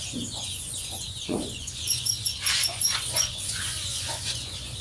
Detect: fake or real fake